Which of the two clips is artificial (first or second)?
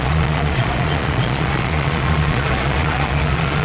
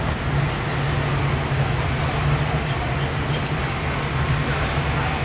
first